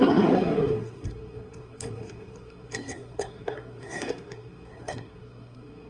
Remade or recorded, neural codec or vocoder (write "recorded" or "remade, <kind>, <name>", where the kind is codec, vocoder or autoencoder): remade, codec, SNAC